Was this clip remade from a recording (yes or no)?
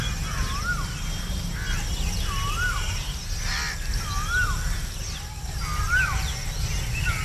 no